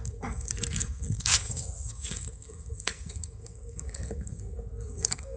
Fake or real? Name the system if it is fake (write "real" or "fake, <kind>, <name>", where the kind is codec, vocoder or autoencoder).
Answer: fake, codec, SNAC